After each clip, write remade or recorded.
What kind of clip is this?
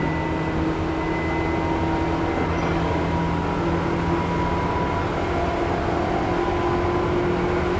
recorded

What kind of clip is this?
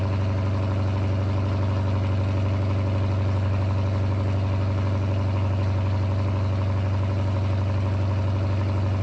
recorded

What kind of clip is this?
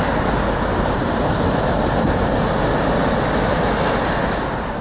recorded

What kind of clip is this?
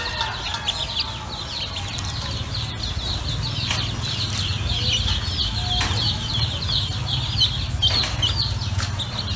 recorded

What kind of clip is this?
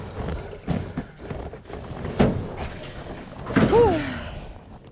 recorded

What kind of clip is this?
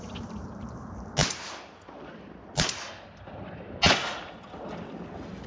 recorded